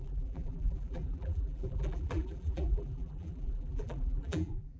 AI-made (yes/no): yes